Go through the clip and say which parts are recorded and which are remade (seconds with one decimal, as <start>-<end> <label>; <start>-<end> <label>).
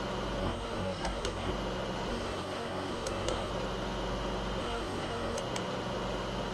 0.0-0.4 recorded; 0.4-1.5 remade; 1.5-2.1 recorded; 2.1-3.5 remade; 3.5-4.6 recorded; 4.6-5.4 remade; 5.4-6.5 recorded